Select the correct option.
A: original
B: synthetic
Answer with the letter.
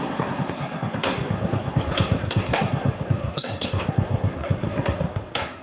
B